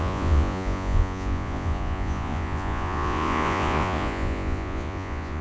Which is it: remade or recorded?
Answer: remade